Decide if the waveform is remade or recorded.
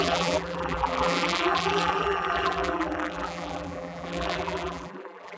remade